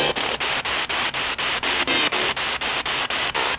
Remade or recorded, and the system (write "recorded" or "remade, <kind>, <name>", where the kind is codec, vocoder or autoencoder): recorded